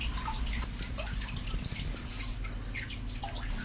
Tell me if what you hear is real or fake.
real